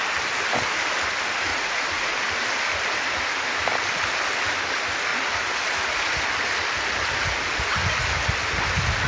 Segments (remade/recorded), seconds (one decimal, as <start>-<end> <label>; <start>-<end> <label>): 0.0-1.5 recorded; 1.5-2.2 remade; 2.2-9.1 recorded